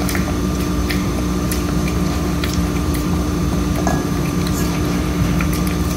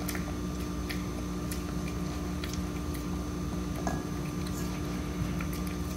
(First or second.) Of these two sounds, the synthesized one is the first